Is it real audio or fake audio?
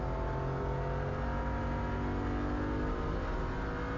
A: real